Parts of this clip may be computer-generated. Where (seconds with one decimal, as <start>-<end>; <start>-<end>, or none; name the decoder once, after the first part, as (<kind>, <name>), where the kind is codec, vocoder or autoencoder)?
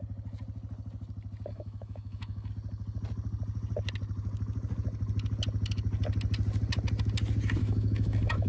1.5-2.5 (autoencoder, DAC-VAE); 7.6-8.5